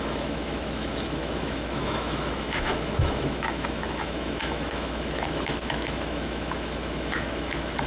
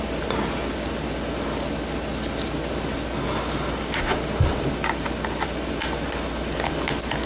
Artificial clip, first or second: first